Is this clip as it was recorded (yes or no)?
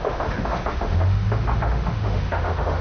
no